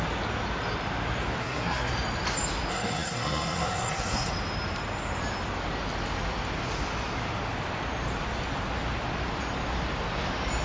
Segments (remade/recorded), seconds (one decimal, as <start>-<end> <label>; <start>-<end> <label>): 0.0-1.4 recorded; 1.4-1.9 remade; 1.9-2.7 recorded; 2.7-4.3 remade; 4.3-10.6 recorded